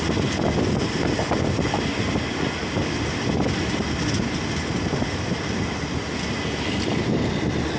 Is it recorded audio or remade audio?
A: recorded